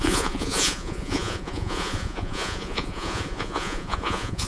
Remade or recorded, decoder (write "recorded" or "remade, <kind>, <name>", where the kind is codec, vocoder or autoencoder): remade, vocoder, Vocos